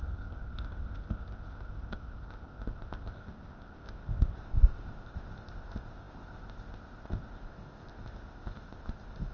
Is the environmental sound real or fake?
fake